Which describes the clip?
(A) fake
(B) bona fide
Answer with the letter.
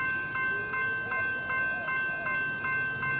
B